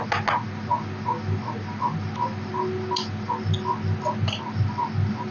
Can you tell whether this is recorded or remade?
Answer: recorded